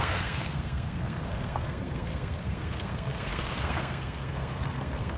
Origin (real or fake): fake